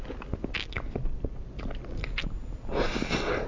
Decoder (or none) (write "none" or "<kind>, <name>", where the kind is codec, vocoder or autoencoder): none